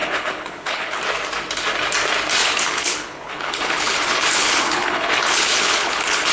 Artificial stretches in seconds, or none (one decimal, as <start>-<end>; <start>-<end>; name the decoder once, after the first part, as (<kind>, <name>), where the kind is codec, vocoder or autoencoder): 0.0-1.0 (codec, HILCodec); 2.4-6.3